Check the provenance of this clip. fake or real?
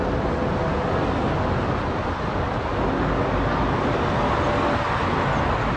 real